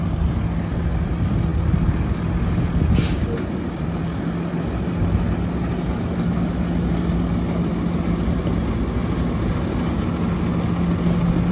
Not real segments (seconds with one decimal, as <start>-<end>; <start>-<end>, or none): none